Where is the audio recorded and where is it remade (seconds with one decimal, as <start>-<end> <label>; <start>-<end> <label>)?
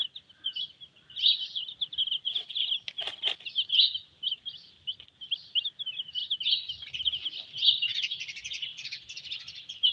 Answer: 0.0-9.9 recorded